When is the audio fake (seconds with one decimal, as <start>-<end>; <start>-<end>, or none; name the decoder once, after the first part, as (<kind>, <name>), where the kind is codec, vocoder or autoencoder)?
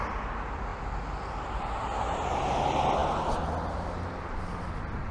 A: none